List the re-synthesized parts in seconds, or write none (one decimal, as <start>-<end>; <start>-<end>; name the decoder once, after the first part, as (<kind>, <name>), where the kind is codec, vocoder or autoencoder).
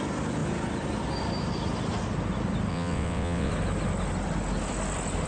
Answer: 2.7-3.5 (vocoder, WaveNeXt)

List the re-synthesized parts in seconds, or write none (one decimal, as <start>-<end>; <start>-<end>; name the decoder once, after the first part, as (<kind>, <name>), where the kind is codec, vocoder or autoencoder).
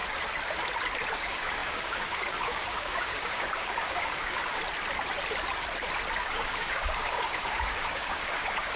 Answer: 1.2-4.6 (codec, DAC); 6.2-8.8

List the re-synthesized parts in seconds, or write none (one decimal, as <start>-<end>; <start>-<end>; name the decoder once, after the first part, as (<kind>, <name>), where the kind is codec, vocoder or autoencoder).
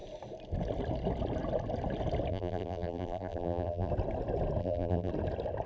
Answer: 2.3-3.9 (vocoder, BigVGAN v2); 4.6-5.1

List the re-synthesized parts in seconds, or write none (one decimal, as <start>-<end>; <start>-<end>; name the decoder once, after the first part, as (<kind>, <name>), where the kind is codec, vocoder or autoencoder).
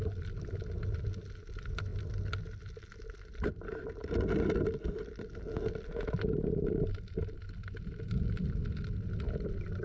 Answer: none